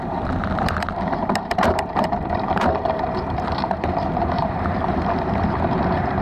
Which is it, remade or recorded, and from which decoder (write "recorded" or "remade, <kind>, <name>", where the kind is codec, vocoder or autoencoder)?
remade, vocoder, BigVGAN v2